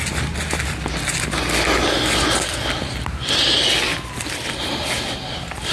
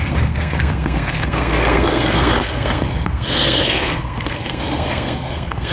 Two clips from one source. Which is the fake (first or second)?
second